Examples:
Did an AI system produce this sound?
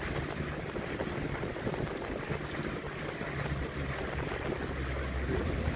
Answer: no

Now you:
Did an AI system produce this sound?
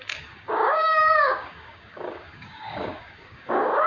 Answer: yes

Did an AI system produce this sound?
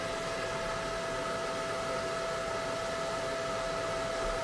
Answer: no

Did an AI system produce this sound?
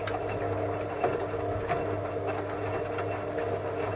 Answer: no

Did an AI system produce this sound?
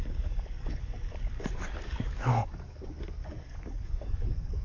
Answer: yes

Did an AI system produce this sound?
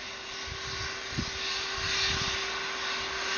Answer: no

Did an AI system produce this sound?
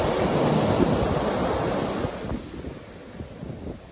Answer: no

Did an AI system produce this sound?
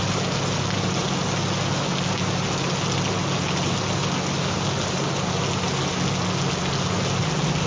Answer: no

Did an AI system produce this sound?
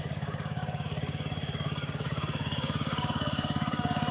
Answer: yes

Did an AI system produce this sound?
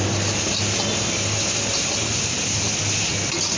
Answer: no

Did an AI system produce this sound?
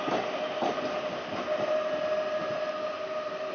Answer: no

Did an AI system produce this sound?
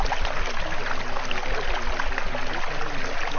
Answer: no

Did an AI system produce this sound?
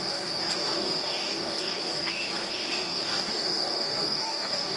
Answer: yes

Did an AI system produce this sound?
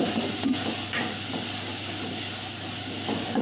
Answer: no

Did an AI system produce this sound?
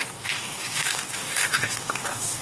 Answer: yes